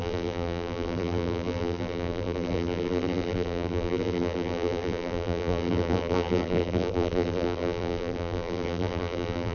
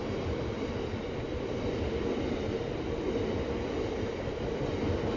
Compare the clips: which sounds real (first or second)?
second